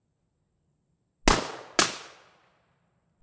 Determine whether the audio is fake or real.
real